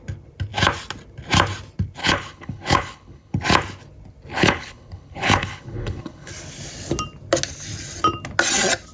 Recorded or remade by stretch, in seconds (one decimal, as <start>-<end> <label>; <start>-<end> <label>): 0.0-2.0 recorded; 2.0-3.4 remade; 3.4-4.3 recorded; 4.3-6.3 remade; 6.3-8.9 recorded